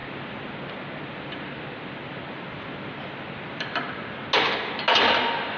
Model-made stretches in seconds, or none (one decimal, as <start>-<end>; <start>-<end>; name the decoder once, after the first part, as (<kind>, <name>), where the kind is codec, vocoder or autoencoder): none